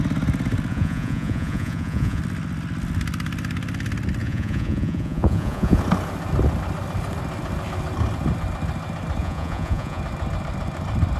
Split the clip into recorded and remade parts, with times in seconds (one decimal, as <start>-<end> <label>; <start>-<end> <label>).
0.0-0.7 recorded; 0.7-2.2 remade; 2.2-4.2 recorded; 4.2-5.8 remade; 5.8-9.2 recorded; 9.2-10.0 remade; 10.0-11.2 recorded